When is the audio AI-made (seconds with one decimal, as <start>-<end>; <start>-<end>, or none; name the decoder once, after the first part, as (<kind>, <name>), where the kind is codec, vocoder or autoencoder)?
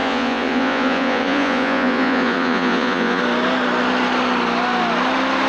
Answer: 0.0-3.2 (vocoder, Vocos)